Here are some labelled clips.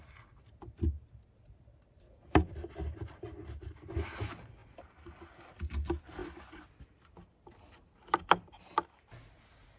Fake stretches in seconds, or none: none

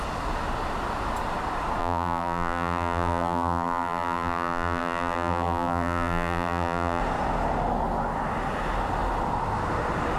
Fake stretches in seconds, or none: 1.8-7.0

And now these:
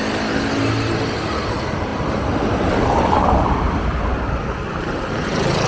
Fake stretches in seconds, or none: 1.9-4.3